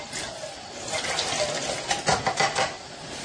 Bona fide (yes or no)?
yes